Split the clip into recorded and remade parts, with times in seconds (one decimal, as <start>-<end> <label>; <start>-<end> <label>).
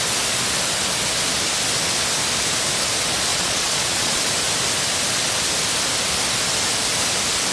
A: 0.0-3.3 recorded; 3.3-4.2 remade; 4.2-7.5 recorded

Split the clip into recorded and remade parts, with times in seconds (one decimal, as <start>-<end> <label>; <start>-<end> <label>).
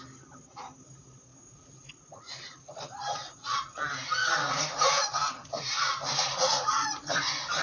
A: 0.0-1.3 recorded; 1.3-3.8 remade; 3.8-4.2 recorded; 4.2-7.6 remade